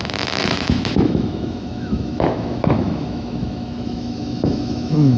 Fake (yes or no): yes